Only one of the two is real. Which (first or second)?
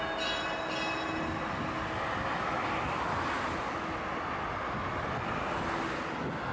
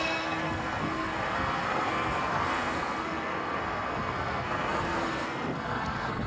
first